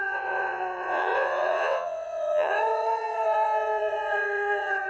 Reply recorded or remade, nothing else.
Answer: remade